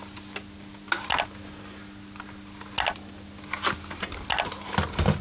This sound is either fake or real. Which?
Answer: real